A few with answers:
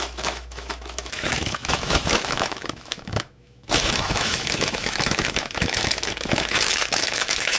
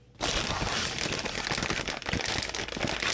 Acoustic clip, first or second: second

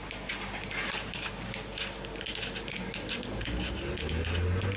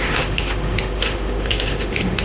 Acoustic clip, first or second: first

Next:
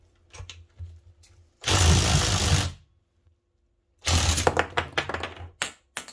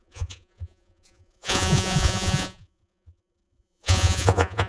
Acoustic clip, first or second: first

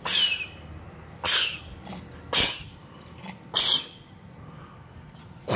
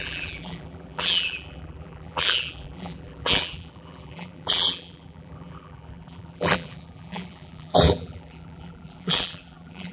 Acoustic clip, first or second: first